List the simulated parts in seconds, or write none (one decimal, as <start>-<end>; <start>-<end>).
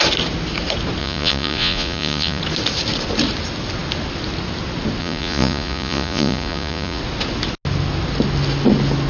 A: 1.0-2.4; 5.0-7.0